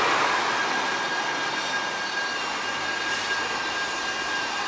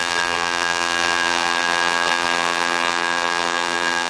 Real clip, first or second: first